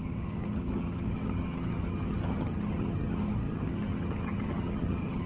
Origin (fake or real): fake